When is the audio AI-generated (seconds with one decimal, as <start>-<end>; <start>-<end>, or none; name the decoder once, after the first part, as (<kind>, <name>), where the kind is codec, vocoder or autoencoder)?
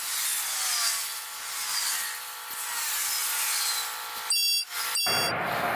1.1-1.6 (vocoder, BigVGAN v2)